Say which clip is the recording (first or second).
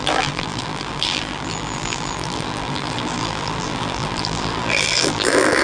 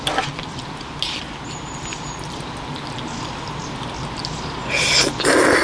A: second